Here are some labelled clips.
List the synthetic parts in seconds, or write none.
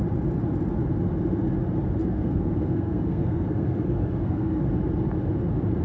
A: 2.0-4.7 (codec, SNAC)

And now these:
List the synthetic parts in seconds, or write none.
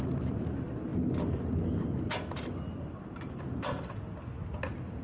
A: none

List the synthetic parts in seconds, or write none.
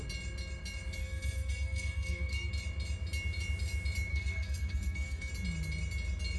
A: 1.0-2.5 (codec, SNAC); 4.1-5.3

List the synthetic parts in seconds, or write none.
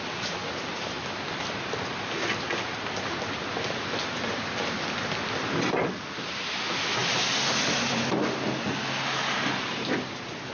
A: none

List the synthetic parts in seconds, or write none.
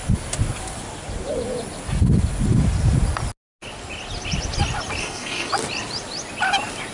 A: 5.0-5.5 (codec, SNAC)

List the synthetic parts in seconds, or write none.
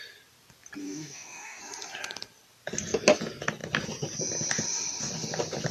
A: 0.8-1.6 (codec, DAC)